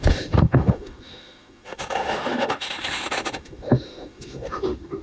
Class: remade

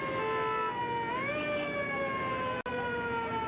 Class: recorded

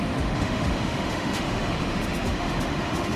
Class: remade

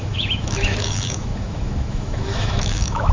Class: remade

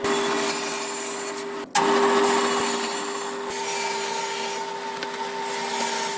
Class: recorded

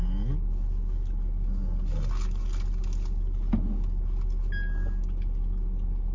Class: recorded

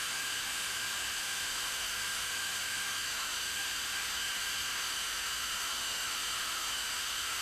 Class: remade